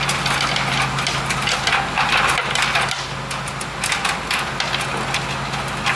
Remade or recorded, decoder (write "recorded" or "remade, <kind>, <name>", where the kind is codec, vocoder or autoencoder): recorded